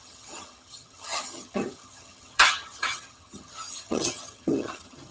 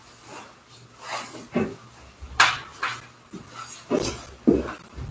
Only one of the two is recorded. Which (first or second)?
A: second